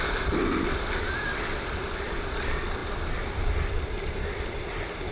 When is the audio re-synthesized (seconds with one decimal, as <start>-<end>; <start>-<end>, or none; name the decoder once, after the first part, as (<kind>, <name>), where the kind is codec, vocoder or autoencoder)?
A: none